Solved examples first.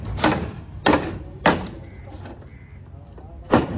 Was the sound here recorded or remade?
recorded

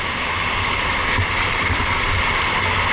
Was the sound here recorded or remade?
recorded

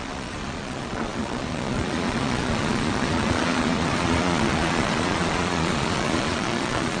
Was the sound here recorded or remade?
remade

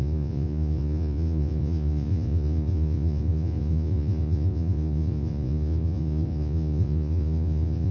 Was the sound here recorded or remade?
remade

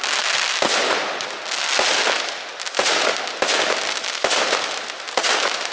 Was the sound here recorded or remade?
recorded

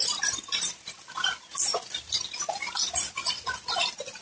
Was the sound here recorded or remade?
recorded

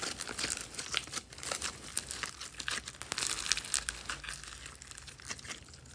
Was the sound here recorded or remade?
recorded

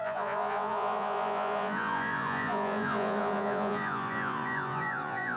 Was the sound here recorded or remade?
remade